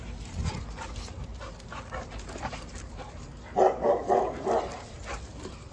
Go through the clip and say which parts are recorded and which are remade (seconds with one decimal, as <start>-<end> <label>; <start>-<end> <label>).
0.0-1.3 remade; 1.3-4.6 recorded; 4.6-5.7 remade